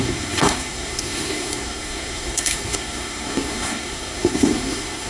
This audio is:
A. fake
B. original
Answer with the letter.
A